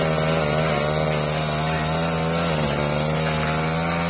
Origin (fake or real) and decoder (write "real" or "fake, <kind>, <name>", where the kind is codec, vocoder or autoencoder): real